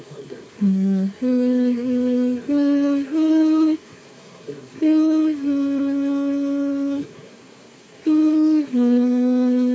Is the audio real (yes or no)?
no